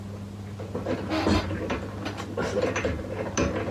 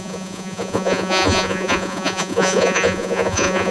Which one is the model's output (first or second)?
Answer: second